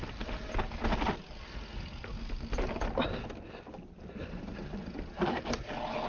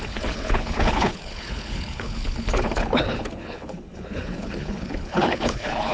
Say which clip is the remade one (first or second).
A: second